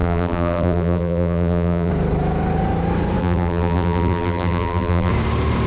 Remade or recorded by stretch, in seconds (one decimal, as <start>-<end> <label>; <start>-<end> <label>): 0.0-1.9 remade; 1.9-3.2 recorded; 3.2-5.1 remade; 5.1-5.7 recorded